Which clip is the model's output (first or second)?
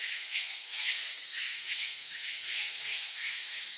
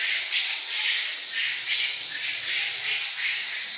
first